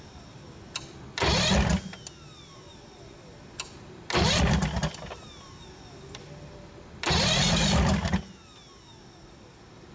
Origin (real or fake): real